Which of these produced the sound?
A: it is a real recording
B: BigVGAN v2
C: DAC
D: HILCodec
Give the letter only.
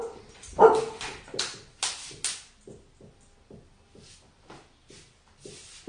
A